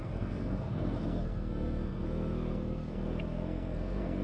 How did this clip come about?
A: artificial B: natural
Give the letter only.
A